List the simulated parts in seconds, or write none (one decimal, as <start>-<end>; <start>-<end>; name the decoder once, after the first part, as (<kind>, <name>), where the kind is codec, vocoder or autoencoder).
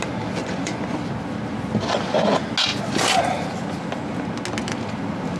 0.4-1.0 (vocoder, Vocos)